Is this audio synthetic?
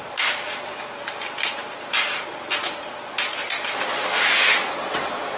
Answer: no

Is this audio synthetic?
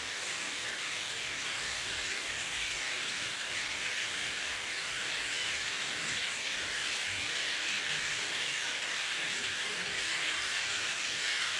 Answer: yes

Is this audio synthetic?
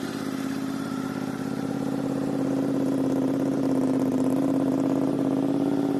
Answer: no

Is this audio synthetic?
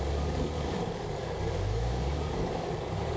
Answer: yes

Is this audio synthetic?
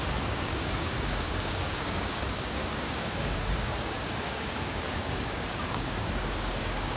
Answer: yes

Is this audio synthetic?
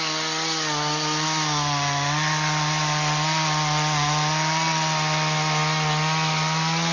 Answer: no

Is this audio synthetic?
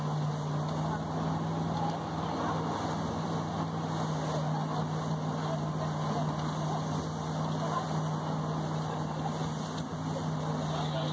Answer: no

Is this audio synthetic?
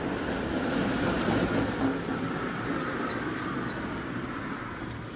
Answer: no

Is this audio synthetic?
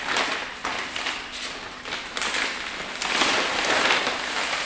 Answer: no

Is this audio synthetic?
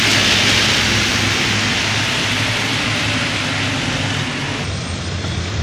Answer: no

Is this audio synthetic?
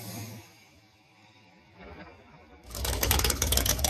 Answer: yes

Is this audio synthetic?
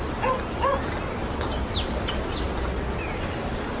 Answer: no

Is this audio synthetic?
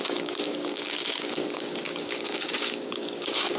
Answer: yes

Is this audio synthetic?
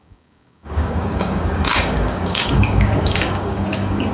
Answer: yes